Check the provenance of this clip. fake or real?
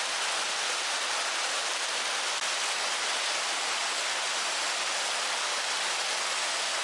real